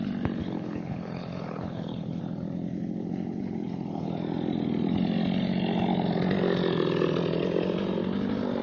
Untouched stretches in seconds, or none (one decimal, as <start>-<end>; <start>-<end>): 0.0-0.4; 2.2-2.7; 4.1-8.6